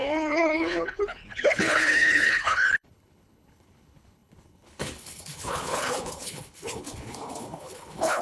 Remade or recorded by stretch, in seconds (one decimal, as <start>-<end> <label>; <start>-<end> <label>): 0.0-8.2 remade